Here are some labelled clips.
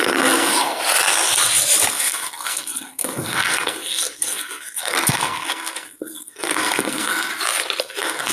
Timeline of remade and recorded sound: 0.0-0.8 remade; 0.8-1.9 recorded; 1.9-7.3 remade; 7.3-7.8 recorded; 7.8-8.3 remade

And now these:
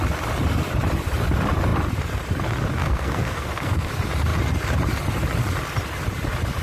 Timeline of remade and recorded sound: 0.0-2.8 recorded; 2.8-3.9 remade; 3.9-6.6 recorded

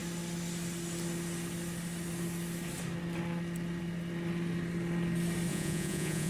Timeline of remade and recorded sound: 0.0-5.5 recorded; 5.5-6.3 remade

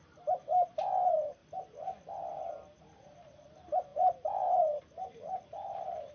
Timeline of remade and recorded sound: 0.0-1.4 remade; 1.4-2.5 recorded; 2.5-6.1 remade

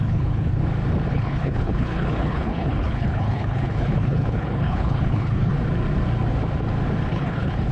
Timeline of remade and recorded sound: 0.0-0.6 remade; 0.6-1.1 recorded; 1.1-5.5 remade; 5.5-7.1 recorded; 7.1-7.7 remade

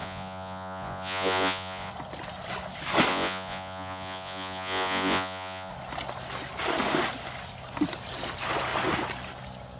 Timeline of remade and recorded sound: 0.0-1.9 remade; 1.9-3.1 recorded; 3.1-5.7 remade; 5.7-9.8 recorded

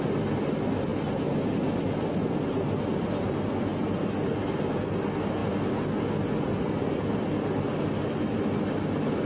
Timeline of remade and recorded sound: 0.0-9.3 recorded